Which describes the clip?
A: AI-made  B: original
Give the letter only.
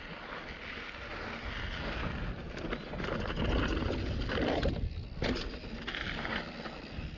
B